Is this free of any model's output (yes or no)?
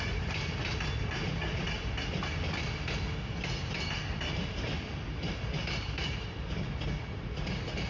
yes